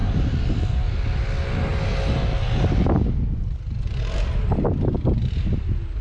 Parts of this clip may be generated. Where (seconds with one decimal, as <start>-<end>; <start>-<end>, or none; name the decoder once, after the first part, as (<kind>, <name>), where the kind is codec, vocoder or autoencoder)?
none